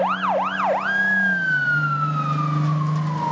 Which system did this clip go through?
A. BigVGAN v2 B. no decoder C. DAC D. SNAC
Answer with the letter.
B